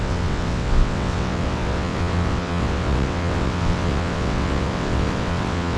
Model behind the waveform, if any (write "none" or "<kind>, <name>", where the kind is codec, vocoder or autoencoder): vocoder, WaveNeXt